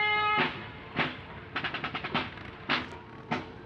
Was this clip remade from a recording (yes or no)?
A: yes